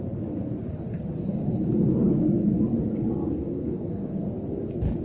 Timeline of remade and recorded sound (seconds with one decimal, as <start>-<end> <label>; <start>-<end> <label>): 0.0-3.4 recorded; 3.4-4.3 remade; 4.3-5.0 recorded